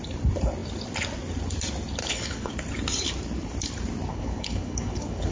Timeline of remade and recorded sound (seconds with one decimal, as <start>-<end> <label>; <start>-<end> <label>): 0.0-2.0 recorded; 2.0-2.5 remade; 2.5-4.1 recorded; 4.1-5.3 remade